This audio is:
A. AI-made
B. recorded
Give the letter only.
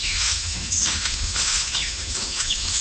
A